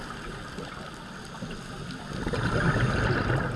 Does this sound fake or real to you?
real